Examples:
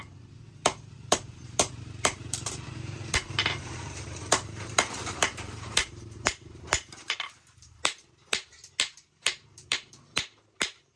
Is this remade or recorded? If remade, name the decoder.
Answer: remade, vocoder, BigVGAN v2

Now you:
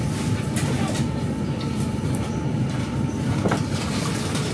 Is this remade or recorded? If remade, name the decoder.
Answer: remade, vocoder, BigVGAN v2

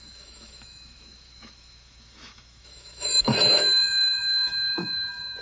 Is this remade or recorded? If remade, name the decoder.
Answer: remade, autoencoder, DAC-VAE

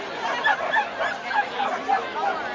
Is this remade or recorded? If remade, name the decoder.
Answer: recorded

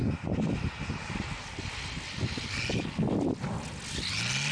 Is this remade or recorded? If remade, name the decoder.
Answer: recorded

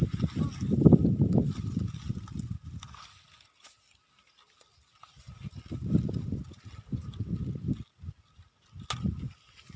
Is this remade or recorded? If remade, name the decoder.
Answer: recorded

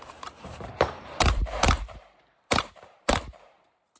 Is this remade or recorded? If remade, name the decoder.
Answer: remade, vocoder, BigVGAN v2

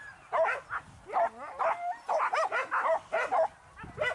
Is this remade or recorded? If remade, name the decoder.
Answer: recorded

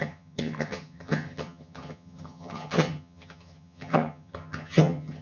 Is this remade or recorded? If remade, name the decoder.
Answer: remade, vocoder, HiFi-GAN